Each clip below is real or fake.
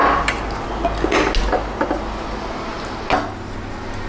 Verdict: real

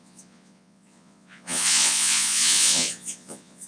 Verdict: fake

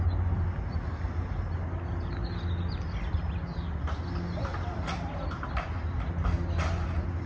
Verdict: real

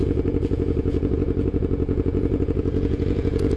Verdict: fake